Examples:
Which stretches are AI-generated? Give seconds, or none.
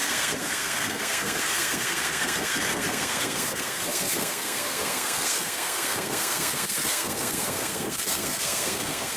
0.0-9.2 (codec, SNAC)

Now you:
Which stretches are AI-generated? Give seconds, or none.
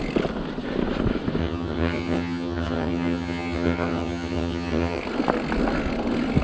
1.4-5.0 (vocoder, HiFi-GAN)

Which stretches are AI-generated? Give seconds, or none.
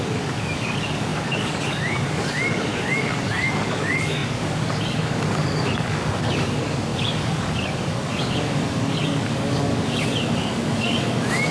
0.0-11.5 (codec, DAC)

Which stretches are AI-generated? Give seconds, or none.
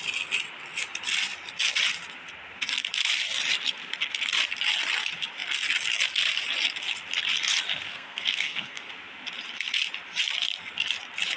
7.9-8.9 (codec, SNAC)